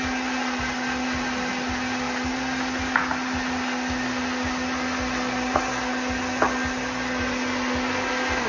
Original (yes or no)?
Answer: yes